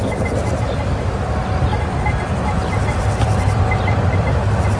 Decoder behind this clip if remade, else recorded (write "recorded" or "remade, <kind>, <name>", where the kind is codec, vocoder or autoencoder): recorded